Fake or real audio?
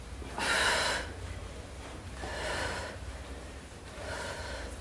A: fake